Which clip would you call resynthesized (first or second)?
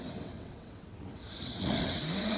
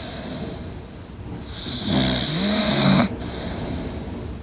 first